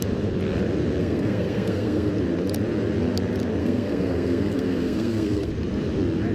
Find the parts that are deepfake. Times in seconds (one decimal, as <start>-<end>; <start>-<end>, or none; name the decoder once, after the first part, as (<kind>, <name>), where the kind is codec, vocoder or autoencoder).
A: 1.0-2.1 (codec, SNAC); 3.6-5.5